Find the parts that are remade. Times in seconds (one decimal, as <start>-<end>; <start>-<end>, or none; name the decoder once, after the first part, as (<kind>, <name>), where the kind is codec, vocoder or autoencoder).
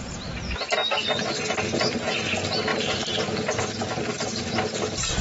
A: 2.7-4.5 (vocoder, BigVGAN v2)